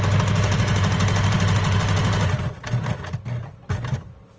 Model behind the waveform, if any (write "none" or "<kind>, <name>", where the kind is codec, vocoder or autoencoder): none